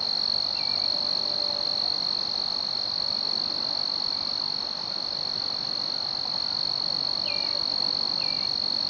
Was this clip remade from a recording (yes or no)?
no